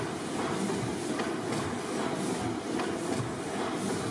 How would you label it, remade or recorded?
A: recorded